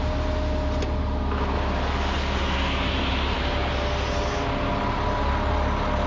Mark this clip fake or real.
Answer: real